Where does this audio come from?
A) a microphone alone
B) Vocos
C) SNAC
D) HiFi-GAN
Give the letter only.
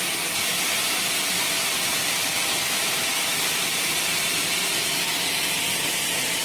A